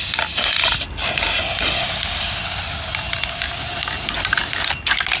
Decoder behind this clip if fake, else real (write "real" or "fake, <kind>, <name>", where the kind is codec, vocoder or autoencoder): real